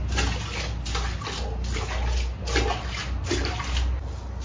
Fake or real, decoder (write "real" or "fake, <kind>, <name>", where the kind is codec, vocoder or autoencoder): real